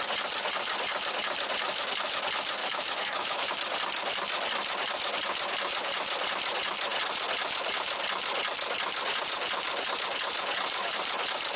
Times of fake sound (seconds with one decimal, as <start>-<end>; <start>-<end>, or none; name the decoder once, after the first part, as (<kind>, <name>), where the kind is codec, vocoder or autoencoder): 2.6-3.5 (autoencoder, DAC-VAE)